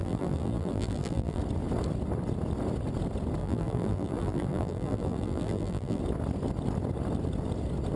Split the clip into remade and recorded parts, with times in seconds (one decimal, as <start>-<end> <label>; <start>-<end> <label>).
0.0-1.4 remade; 1.4-3.4 recorded; 3.4-6.0 remade; 6.0-8.0 recorded